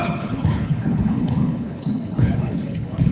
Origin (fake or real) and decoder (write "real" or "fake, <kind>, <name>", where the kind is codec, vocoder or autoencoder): fake, codec, HILCodec